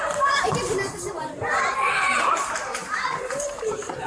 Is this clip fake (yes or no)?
yes